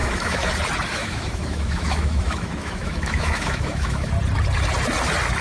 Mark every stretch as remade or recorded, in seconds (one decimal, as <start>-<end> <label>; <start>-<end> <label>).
0.0-0.5 remade; 0.5-0.9 recorded; 0.9-4.1 remade; 4.1-5.4 recorded